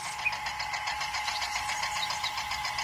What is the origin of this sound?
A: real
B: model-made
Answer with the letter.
A